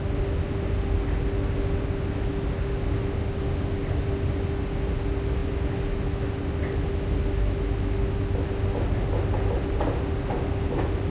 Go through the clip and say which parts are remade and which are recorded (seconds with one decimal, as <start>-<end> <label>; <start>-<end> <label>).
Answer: 0.0-11.1 recorded

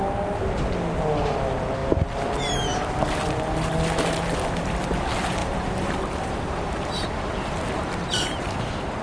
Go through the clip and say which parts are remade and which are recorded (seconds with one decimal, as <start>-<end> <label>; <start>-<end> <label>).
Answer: 0.0-5.4 recorded; 5.4-7.1 remade; 7.1-9.0 recorded

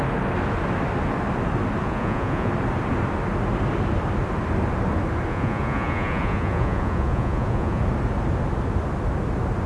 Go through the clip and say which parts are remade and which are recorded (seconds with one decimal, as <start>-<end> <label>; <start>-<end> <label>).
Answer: 0.0-1.8 recorded; 1.8-2.5 remade; 2.5-5.3 recorded; 5.3-7.8 remade; 7.8-9.7 recorded

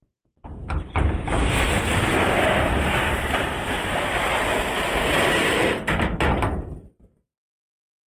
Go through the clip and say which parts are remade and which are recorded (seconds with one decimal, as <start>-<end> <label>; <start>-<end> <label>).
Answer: 0.0-8.1 recorded

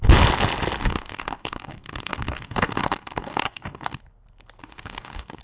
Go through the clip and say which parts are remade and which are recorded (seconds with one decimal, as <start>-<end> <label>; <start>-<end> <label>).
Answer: 0.0-0.8 recorded; 0.8-4.0 remade; 4.0-4.6 recorded; 4.6-5.4 remade